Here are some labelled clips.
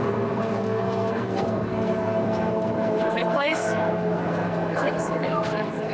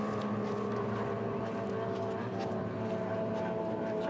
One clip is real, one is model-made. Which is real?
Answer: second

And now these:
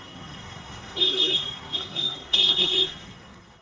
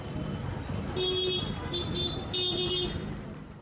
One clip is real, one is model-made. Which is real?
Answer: second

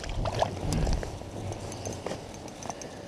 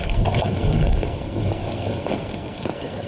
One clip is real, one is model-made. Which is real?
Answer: first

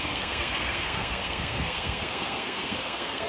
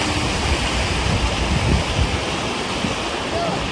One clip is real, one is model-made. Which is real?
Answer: second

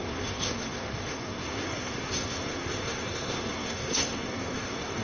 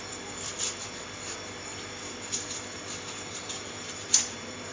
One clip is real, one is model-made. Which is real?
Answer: second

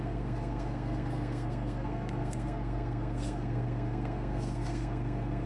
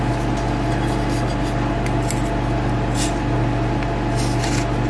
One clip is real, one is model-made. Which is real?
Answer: second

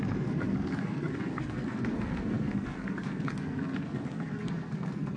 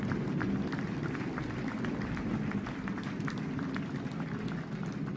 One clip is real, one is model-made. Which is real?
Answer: second